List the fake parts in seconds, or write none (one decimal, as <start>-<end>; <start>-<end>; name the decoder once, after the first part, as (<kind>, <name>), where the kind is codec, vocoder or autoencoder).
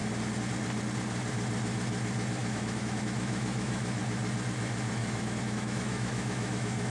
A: 2.4-4.0 (autoencoder, DAC-VAE); 5.0-6.9